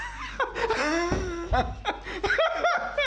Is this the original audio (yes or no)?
yes